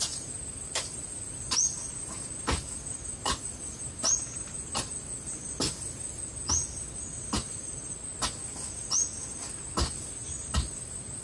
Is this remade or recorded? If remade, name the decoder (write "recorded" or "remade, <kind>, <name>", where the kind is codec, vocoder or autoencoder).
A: recorded